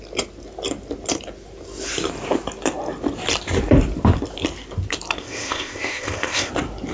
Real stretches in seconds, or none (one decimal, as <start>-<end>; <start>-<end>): 0.0-5.2; 6.5-6.9